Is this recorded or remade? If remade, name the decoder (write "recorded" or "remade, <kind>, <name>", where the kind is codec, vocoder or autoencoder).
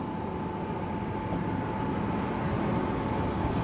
recorded